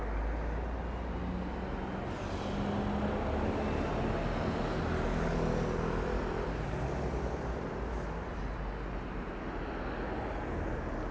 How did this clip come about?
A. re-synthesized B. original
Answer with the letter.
B